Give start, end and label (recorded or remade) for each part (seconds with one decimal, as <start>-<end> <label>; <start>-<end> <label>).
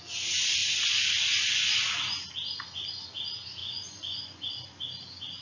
0.0-3.6 recorded; 3.6-4.5 remade; 4.5-5.4 recorded